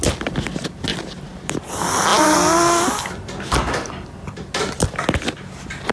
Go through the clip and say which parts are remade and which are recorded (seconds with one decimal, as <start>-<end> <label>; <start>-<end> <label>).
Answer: 0.0-5.9 recorded